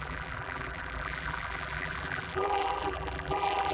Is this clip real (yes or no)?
no